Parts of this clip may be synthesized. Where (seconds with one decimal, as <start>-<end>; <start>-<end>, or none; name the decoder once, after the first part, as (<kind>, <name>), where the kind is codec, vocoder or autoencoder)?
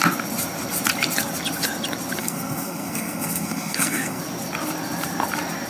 2.2-4.2 (codec, SNAC)